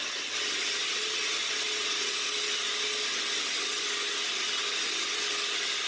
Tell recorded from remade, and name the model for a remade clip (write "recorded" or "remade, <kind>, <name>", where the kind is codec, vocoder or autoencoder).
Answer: recorded